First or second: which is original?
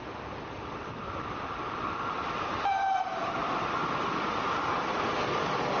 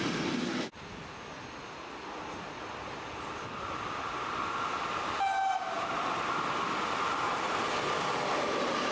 second